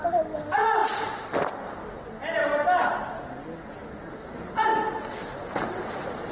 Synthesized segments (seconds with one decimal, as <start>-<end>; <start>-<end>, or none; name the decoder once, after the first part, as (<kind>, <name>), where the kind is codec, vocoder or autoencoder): none